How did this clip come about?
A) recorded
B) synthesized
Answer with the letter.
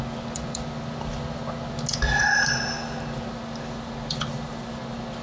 A